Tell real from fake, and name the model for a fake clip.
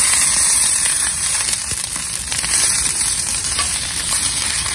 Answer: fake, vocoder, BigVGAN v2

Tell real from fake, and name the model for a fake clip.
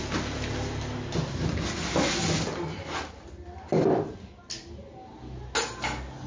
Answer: real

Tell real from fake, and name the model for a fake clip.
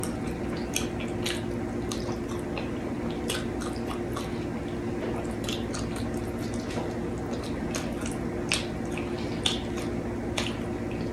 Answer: real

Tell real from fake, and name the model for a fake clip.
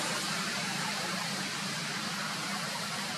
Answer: fake, vocoder, BigVGAN v2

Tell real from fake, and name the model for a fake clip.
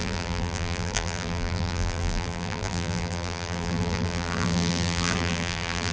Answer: fake, vocoder, BigVGAN v2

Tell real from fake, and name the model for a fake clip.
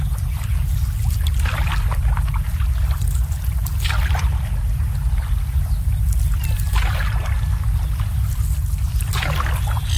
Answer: real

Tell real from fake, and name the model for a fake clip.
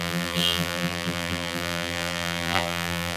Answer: fake, vocoder, BigVGAN v2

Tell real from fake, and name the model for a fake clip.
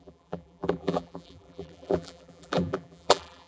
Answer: fake, vocoder, BigVGAN v2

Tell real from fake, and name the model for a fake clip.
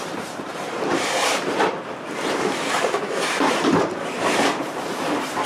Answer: fake, vocoder, BigVGAN v2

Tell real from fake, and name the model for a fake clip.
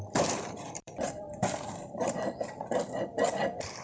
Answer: fake, vocoder, BigVGAN v2